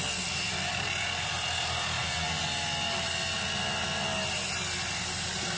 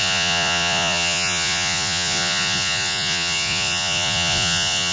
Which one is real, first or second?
first